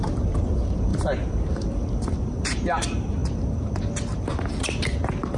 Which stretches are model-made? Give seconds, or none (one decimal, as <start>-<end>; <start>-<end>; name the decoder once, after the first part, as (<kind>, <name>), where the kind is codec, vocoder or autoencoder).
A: 0.0-3.2 (vocoder, BigVGAN v2)